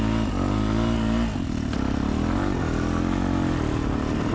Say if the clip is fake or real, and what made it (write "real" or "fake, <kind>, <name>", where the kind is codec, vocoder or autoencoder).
real